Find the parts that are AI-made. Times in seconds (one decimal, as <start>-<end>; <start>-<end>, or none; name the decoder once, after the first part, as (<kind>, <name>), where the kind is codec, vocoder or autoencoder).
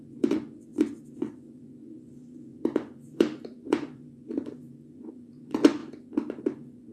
0.0-5.8 (vocoder, Vocos); 6.4-6.9